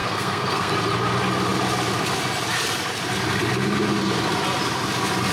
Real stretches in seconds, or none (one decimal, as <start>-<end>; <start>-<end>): 0.7-5.3